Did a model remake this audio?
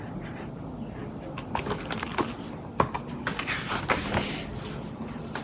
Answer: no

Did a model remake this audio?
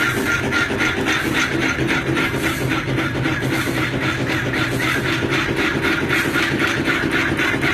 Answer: no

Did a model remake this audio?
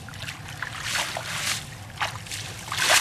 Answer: no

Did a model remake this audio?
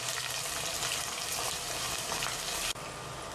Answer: no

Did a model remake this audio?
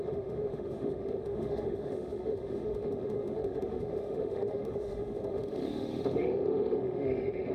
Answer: yes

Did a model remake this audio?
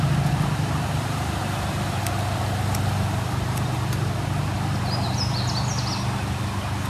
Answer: no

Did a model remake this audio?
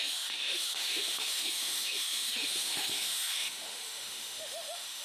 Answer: yes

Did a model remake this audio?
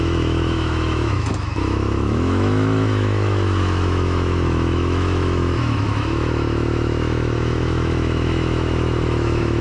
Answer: yes